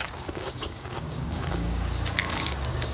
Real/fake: fake